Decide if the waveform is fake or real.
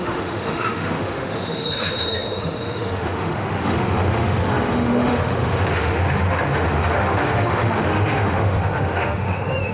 fake